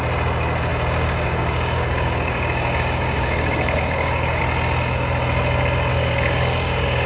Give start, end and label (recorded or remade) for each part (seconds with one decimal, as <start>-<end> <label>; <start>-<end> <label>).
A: 0.0-0.7 recorded; 0.7-4.4 remade; 4.4-5.9 recorded; 5.9-7.1 remade